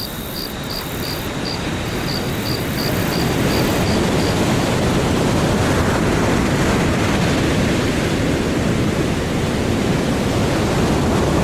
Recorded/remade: recorded